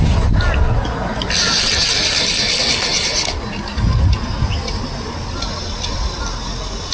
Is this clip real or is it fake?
real